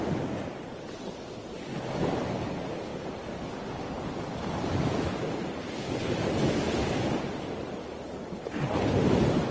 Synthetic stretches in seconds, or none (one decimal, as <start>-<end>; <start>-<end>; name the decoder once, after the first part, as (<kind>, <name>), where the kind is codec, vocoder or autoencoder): none